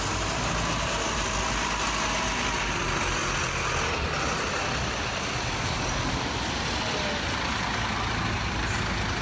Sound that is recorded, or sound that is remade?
recorded